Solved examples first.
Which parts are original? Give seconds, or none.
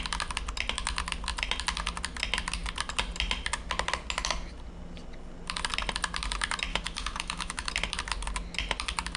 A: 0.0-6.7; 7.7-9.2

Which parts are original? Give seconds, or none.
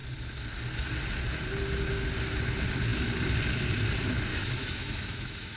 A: 0.0-4.3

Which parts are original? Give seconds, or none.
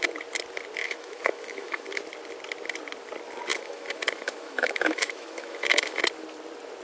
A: 0.0-0.8; 2.0-3.5; 6.0-6.8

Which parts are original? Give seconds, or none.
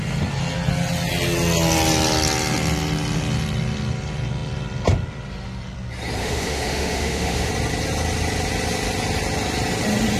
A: 0.0-6.2; 7.5-10.2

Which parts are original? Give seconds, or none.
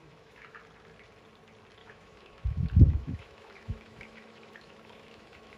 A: 0.6-1.8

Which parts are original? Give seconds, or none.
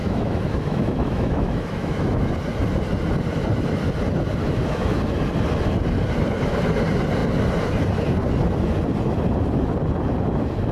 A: 2.3-4.4; 5.0-10.7